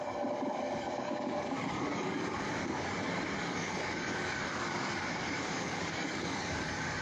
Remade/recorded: remade